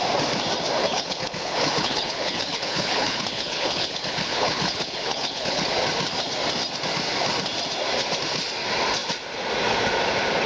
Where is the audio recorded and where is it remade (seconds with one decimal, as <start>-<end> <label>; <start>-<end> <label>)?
0.0-0.8 recorded; 0.8-5.7 remade; 5.7-10.5 recorded